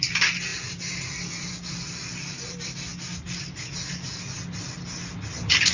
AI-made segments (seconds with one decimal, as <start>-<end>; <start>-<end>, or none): none